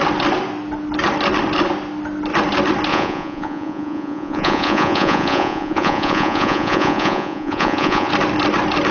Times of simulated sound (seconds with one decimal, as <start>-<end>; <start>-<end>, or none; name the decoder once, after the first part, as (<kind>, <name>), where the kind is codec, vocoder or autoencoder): 2.9-8.1 (vocoder, Vocos)